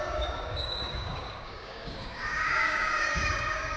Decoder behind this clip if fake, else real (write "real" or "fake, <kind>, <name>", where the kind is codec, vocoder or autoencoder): fake, codec, DAC